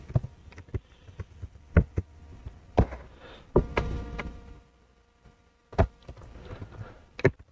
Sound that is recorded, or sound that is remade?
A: recorded